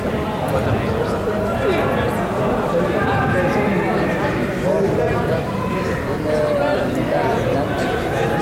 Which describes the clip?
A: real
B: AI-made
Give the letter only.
A